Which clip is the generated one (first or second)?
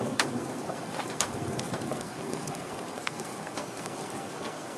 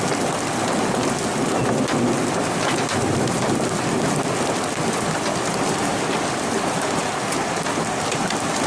first